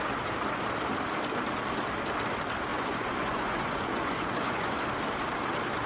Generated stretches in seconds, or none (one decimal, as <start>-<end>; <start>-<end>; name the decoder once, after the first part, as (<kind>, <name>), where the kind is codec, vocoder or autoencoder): 2.7-4.8 (vocoder, Vocos)